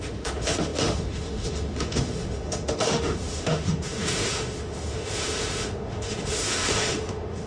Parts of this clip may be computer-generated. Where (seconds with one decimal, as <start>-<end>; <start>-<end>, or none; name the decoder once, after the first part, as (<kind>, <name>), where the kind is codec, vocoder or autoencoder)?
0.0-7.5 (autoencoder, DAC-VAE)